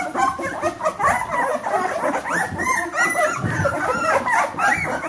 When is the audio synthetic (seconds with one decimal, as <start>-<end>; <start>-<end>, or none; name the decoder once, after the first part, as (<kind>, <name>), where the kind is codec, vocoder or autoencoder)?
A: none